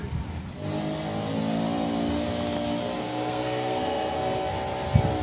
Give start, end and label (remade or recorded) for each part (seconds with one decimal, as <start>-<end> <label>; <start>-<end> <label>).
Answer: 0.0-3.0 recorded; 3.0-4.5 remade; 4.5-5.2 recorded

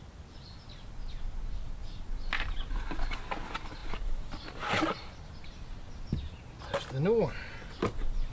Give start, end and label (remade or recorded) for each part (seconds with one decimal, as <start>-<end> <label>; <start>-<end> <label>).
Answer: 0.0-8.3 recorded

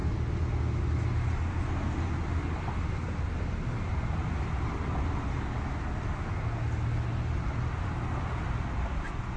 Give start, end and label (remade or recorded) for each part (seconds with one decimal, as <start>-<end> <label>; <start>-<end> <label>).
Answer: 0.0-9.4 recorded